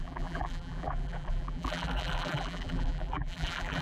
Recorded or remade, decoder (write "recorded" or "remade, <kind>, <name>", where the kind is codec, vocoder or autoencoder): remade, vocoder, BigVGAN v2